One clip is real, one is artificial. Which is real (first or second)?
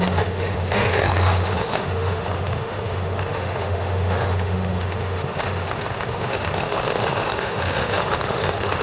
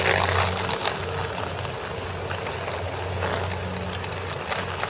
second